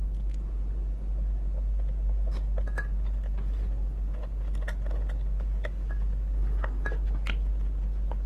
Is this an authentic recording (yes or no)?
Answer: yes